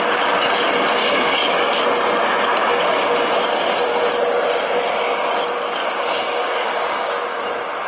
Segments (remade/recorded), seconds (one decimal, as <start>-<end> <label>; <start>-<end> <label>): 0.0-1.0 recorded; 1.0-1.8 remade; 1.8-2.7 recorded; 2.7-3.3 remade; 3.3-6.1 recorded; 6.1-7.1 remade; 7.1-7.9 recorded